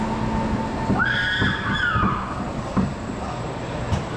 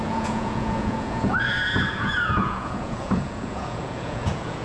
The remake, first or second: second